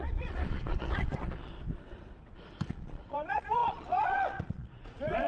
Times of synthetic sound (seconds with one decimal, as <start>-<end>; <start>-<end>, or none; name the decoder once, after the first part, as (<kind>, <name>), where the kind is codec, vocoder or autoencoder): 0.0-1.5 (vocoder, Vocos); 2.7-5.3